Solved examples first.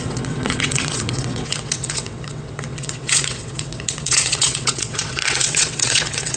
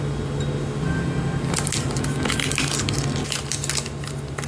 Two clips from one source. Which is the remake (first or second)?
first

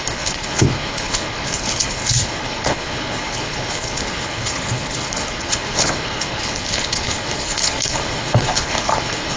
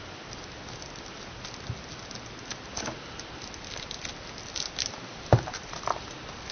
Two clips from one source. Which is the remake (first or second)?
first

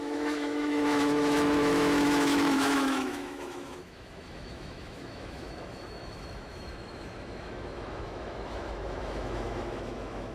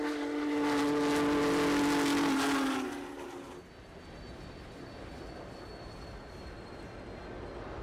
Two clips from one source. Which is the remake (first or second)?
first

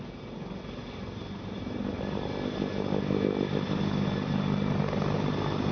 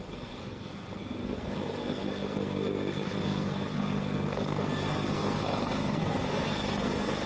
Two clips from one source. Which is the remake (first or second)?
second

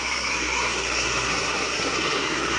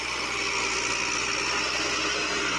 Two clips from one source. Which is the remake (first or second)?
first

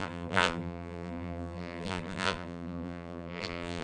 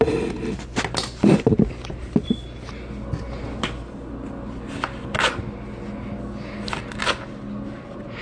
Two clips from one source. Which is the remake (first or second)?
first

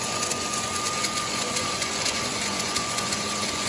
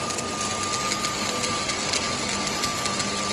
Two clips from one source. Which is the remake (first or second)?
first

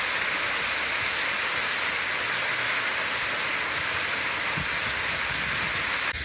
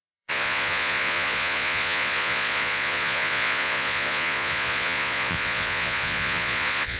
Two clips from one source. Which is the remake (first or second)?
second